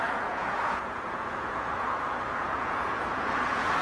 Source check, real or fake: fake